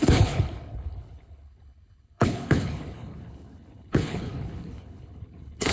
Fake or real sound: fake